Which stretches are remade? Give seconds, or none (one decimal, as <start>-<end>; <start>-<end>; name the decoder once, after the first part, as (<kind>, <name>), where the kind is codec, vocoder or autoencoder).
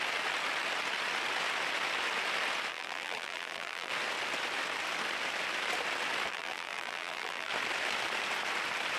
2.7-3.9 (vocoder, BigVGAN v2); 6.3-7.5